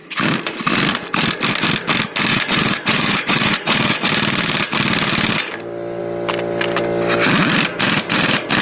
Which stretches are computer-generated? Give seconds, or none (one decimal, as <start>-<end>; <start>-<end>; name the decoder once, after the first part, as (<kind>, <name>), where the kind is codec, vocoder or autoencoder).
2.3-4.1 (vocoder, Vocos)